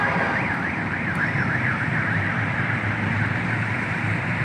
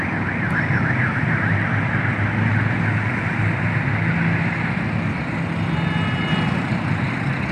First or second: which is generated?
first